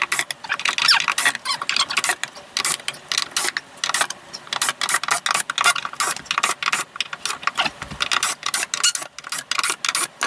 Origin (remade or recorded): recorded